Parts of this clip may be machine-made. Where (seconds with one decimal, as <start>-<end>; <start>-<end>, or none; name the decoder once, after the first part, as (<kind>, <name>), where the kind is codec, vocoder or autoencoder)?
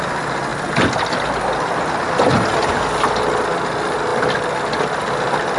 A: 4.1-4.6 (vocoder, BigVGAN v2)